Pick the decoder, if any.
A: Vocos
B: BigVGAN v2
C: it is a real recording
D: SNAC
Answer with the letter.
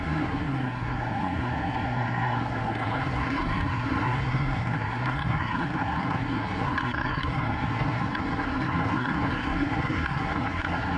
D